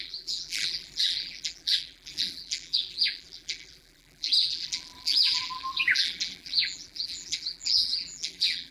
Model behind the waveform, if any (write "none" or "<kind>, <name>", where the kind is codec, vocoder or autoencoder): vocoder, BigVGAN v2